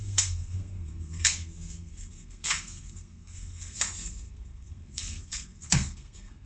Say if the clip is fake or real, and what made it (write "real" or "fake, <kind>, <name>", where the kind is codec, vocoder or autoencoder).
fake, codec, SNAC